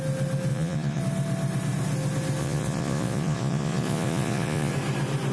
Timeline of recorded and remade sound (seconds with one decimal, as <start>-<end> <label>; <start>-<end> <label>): 0.0-0.5 recorded; 0.5-1.0 remade; 1.0-2.4 recorded; 2.4-4.7 remade; 4.7-5.3 recorded